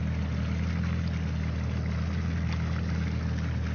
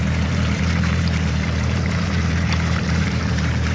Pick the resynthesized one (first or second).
second